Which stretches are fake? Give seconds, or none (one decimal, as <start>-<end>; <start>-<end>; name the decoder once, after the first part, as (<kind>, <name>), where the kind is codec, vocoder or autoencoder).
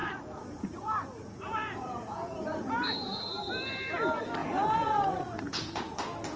0.0-3.5 (vocoder, Vocos); 4.4-5.8